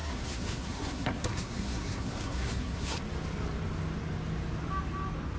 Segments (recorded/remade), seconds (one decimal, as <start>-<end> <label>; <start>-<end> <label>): 0.0-3.0 remade; 3.0-5.4 recorded